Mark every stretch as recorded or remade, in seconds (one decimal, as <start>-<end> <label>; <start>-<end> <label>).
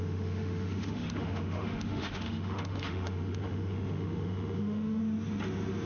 0.0-5.0 remade; 5.0-5.9 recorded